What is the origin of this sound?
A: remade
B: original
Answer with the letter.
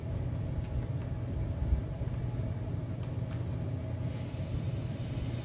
B